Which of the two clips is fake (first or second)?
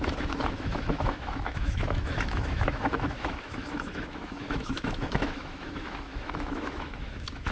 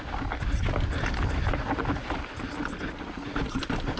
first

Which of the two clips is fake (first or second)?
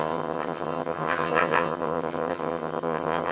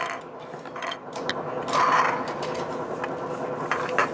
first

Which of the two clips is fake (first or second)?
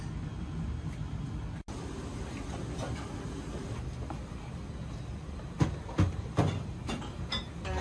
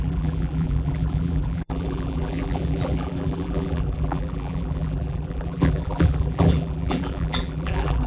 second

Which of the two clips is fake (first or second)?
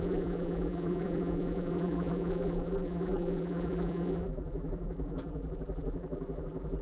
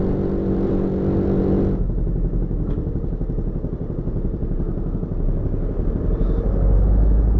first